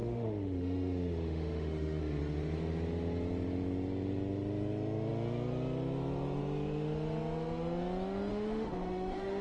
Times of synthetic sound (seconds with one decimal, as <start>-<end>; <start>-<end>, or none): 0.0-2.0; 8.3-9.4